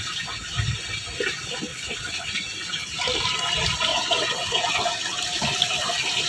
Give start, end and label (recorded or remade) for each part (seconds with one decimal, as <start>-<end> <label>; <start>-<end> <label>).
0.0-1.7 recorded; 1.7-2.3 remade; 2.3-3.9 recorded; 3.9-4.7 remade; 4.7-6.3 recorded